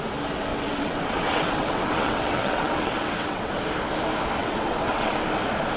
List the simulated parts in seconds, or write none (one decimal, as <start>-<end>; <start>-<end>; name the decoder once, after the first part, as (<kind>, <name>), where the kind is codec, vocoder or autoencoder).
0.5-3.5 (vocoder, WaveNeXt); 4.4-5.1